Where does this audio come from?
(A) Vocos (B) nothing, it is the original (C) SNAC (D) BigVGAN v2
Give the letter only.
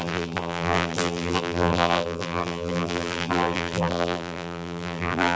D